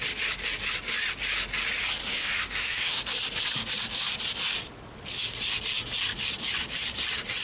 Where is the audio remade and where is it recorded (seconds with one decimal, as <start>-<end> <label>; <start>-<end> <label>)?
0.0-2.0 recorded; 2.0-3.0 remade; 3.0-7.4 recorded

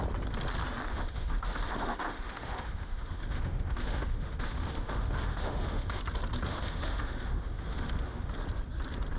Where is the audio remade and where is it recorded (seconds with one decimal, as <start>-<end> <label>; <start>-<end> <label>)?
0.0-0.9 recorded; 0.9-6.0 remade; 6.0-6.5 recorded; 6.5-8.3 remade; 8.3-9.2 recorded

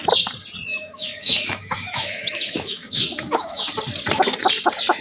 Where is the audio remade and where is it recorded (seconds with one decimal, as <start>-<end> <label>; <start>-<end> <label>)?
0.0-0.7 recorded; 0.7-3.7 remade; 3.7-5.0 recorded

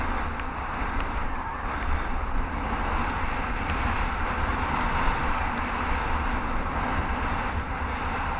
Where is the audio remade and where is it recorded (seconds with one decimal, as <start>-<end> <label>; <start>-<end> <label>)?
0.0-8.4 recorded

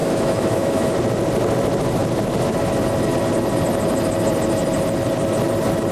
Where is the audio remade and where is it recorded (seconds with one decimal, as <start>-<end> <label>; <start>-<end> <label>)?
0.0-0.9 remade; 0.9-5.9 recorded